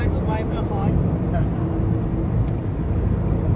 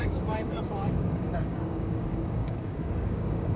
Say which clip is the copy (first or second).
second